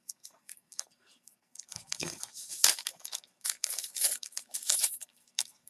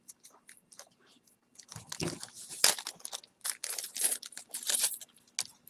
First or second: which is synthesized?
first